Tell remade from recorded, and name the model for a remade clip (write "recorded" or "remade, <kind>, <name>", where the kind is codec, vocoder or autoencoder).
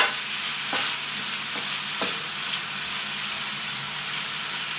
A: recorded